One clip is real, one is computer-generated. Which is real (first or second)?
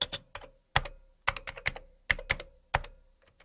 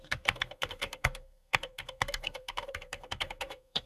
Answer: first